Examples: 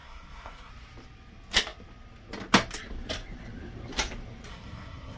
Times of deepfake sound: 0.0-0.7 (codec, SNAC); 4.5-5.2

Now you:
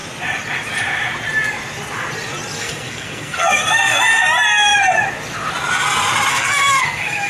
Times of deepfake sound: 2.6-4.0 (codec, SNAC); 6.3-7.3